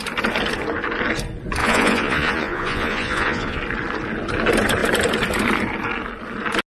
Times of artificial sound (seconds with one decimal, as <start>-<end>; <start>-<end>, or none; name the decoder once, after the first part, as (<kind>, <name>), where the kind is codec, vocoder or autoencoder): 1.6-3.6 (vocoder, Vocos)